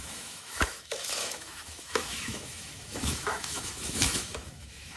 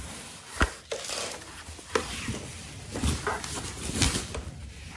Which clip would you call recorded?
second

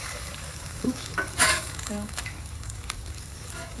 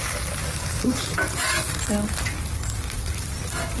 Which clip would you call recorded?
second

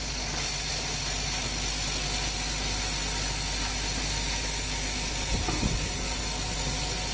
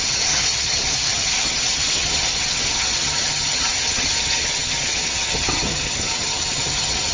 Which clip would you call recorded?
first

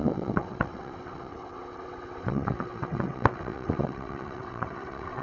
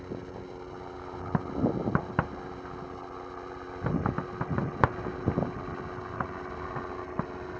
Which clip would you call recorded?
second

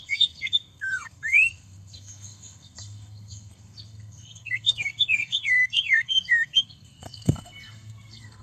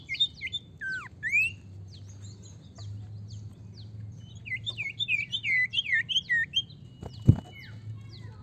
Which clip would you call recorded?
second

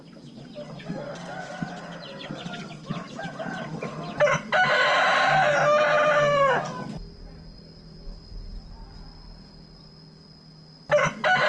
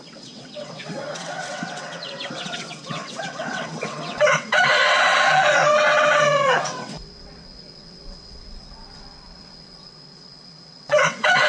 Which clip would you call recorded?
first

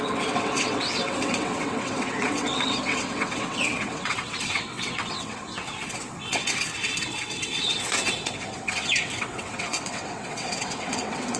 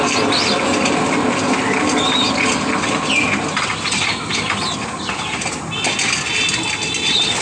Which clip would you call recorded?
second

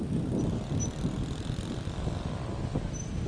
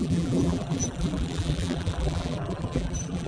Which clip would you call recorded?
first